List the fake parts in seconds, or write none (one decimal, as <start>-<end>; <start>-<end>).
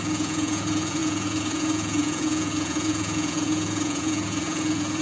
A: 0.0-5.0